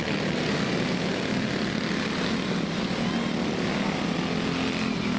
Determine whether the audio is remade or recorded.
recorded